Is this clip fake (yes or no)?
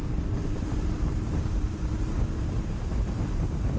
yes